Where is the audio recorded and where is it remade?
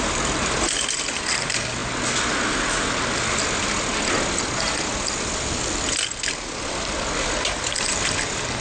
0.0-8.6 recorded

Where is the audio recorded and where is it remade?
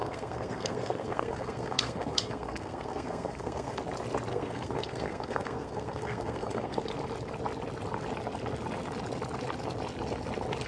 0.0-3.8 remade; 3.8-4.3 recorded; 4.3-6.8 remade; 6.8-10.7 recorded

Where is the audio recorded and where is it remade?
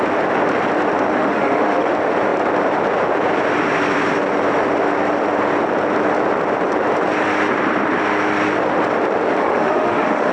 0.0-1.1 recorded; 1.1-1.9 remade; 1.9-9.4 recorded; 9.4-10.3 remade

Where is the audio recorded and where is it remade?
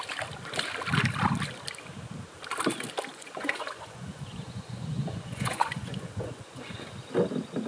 0.0-3.1 recorded; 3.1-6.7 remade; 6.7-7.7 recorded